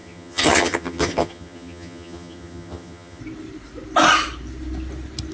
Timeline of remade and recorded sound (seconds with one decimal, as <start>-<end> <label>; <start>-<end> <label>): 0.0-3.2 remade; 3.2-5.3 recorded